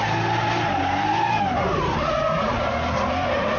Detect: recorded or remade recorded